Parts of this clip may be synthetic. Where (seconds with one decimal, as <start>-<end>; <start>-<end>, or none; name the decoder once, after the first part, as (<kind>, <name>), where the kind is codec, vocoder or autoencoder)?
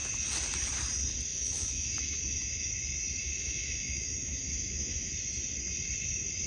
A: 1.3-2.7 (autoencoder, DAC-VAE); 3.2-5.1